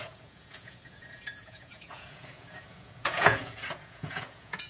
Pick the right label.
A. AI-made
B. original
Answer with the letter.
A